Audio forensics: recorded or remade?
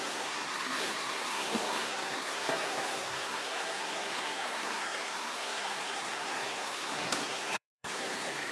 remade